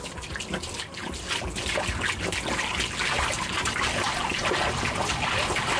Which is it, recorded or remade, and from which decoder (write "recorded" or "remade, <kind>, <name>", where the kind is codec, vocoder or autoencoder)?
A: recorded